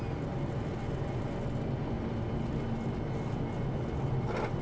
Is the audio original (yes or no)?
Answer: yes